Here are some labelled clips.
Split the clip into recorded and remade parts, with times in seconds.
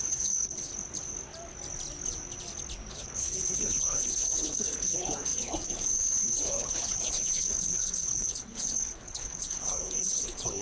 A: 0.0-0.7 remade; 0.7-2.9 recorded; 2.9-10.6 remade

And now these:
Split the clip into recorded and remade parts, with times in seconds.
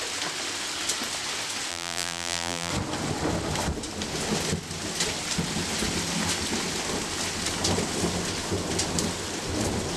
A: 0.0-1.7 recorded; 1.7-2.7 remade; 2.7-10.0 recorded